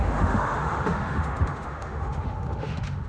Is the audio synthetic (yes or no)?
yes